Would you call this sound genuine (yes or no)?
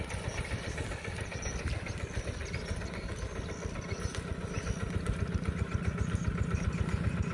yes